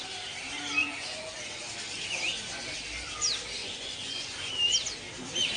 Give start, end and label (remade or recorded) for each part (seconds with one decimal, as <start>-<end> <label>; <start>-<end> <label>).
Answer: 0.0-0.8 recorded; 0.8-1.7 remade; 1.7-3.6 recorded; 3.6-4.5 remade; 4.5-5.6 recorded